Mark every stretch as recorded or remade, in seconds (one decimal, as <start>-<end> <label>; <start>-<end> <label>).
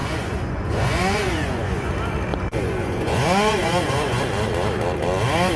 0.0-1.9 remade; 1.9-2.3 recorded; 2.3-4.2 remade; 4.2-5.6 recorded